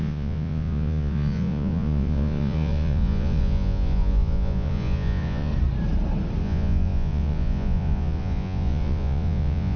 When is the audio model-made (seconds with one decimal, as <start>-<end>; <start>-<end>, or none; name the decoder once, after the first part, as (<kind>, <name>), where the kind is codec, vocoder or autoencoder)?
0.0-5.5 (vocoder, Vocos); 6.4-9.8